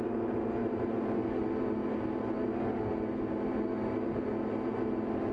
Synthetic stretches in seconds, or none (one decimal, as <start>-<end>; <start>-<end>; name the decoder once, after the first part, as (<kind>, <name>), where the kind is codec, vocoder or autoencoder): 0.6-1.2 (vocoder, BigVGAN v2)